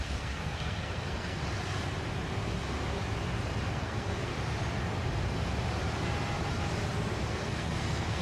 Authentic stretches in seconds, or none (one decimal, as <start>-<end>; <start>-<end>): 1.4-3.7; 4.3-7.3